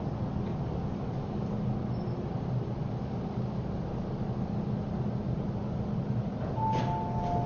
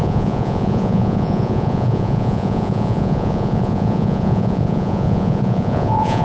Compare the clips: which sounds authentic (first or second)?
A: first